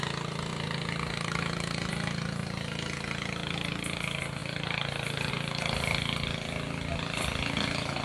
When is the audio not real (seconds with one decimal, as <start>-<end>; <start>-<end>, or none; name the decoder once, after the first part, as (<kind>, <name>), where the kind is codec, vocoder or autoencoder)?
4.4-5.3 (vocoder, BigVGAN v2)